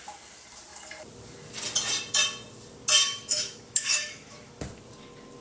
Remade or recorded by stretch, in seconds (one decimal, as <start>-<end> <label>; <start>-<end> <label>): 0.0-3.0 recorded; 3.0-4.6 remade; 4.6-5.4 recorded